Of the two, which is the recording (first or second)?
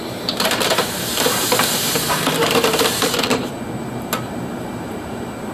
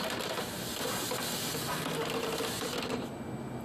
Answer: second